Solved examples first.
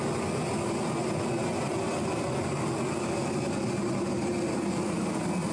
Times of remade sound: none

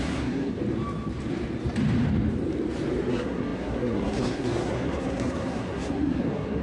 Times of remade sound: 0.0-0.6 (codec, SNAC); 3.1-6.6